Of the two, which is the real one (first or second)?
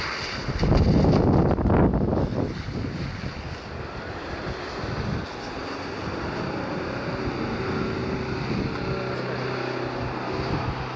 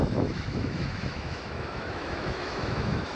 first